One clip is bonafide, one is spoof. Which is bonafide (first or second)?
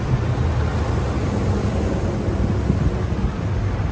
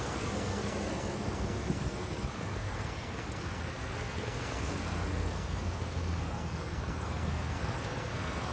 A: first